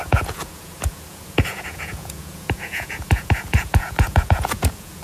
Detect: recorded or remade remade